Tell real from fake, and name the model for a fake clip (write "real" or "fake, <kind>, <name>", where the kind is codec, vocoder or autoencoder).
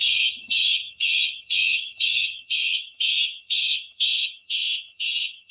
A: fake, vocoder, HiFi-GAN